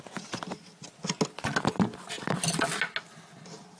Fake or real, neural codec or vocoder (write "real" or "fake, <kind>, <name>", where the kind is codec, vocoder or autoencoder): real